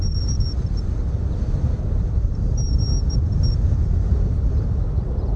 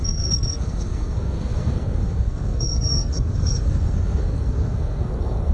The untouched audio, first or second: first